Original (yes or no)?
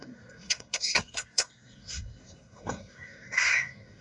no